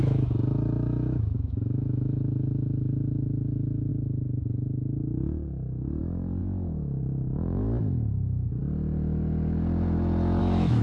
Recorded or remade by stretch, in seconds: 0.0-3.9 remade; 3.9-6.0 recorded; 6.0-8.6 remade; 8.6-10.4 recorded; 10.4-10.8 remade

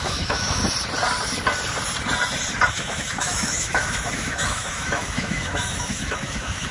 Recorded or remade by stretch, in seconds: 0.0-0.6 remade; 0.6-2.7 recorded; 2.7-6.7 remade

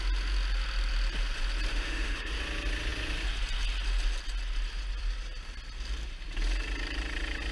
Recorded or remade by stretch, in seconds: 0.0-1.7 recorded; 1.7-2.4 remade; 2.4-7.5 recorded

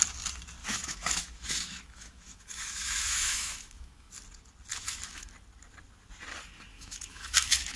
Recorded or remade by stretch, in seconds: 0.0-0.6 recorded; 0.6-4.1 remade; 4.1-4.7 recorded; 4.7-5.3 remade; 5.3-6.7 recorded; 6.7-7.8 remade

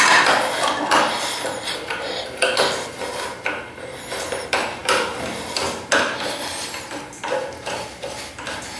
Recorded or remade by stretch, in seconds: 0.0-8.8 recorded

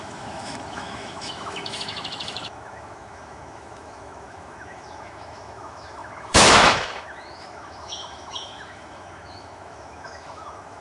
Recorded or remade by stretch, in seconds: 0.0-10.8 remade

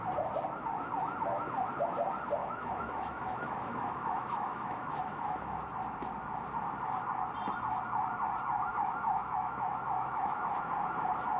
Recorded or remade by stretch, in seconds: 0.0-2.4 recorded; 2.4-5.4 remade; 5.4-8.7 recorded; 8.7-10.4 remade; 10.4-11.4 recorded